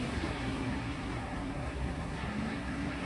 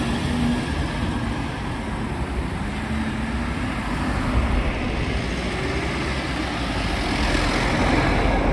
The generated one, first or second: first